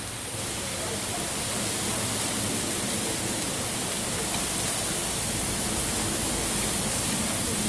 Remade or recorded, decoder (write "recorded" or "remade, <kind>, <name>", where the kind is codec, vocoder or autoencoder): recorded